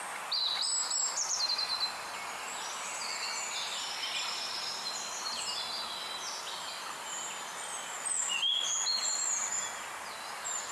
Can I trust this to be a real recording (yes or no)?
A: yes